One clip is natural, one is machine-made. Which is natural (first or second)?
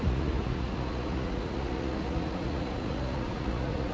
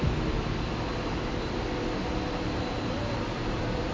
second